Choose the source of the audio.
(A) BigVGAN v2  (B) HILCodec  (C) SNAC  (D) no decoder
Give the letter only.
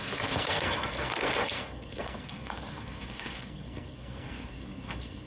C